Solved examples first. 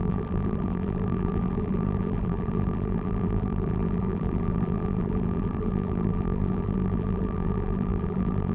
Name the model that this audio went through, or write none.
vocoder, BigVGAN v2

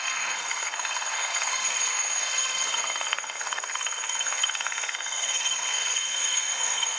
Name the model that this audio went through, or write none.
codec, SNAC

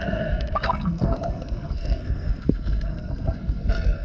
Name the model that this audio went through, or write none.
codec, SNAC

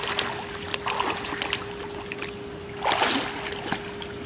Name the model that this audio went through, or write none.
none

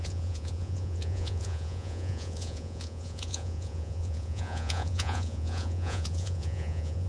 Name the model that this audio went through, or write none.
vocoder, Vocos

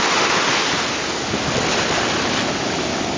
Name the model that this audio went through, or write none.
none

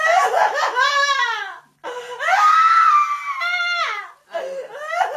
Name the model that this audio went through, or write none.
none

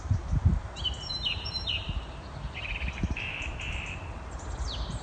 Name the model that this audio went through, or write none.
vocoder, BigVGAN v2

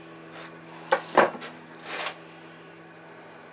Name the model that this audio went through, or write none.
none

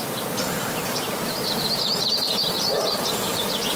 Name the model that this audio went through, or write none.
vocoder, BigVGAN v2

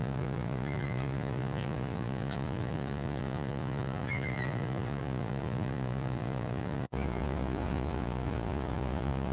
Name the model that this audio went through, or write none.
vocoder, Vocos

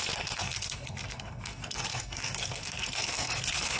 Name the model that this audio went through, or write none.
codec, SNAC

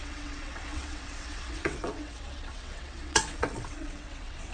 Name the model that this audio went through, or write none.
vocoder, WaveNeXt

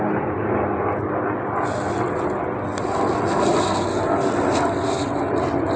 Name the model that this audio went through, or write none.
none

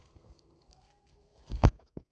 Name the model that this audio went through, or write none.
codec, SNAC